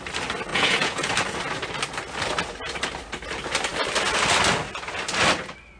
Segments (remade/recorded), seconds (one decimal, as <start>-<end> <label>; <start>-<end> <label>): 0.0-0.5 recorded; 0.5-1.1 remade; 1.1-5.8 recorded